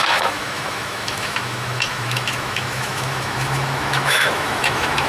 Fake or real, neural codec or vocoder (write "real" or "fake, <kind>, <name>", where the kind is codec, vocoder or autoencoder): fake, autoencoder, DAC-VAE